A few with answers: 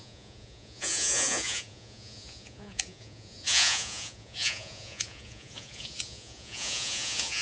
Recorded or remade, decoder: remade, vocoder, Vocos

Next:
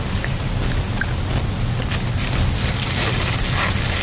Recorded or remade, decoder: recorded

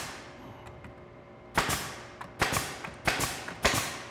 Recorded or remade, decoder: recorded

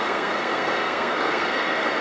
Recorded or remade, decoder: remade, codec, SNAC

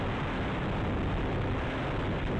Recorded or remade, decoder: recorded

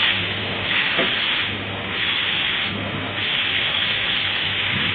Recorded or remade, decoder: remade, autoencoder, DAC-VAE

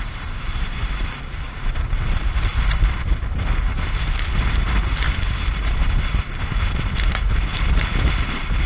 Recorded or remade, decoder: remade, vocoder, BigVGAN v2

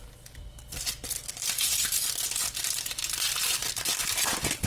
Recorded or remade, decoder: recorded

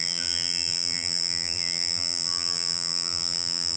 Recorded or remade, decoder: remade, vocoder, BigVGAN v2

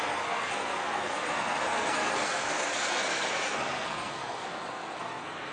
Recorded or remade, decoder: remade, codec, SNAC